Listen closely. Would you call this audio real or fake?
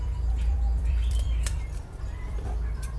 fake